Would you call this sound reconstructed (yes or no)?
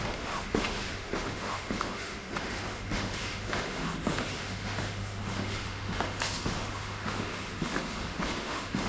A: yes